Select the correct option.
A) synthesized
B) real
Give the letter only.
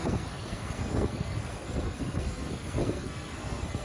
A